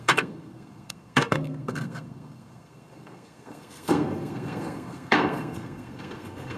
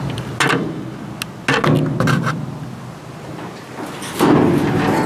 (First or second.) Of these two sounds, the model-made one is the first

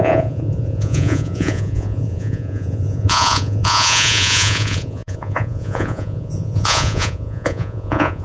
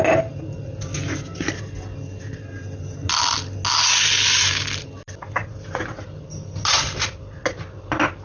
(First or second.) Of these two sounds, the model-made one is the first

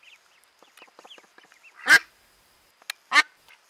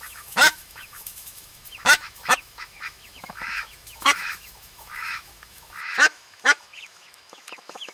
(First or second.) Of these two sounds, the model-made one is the second